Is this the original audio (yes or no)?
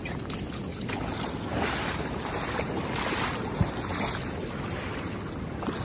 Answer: yes